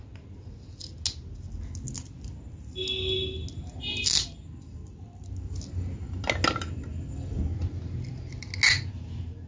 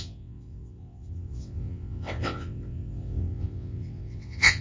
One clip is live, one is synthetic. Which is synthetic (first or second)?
second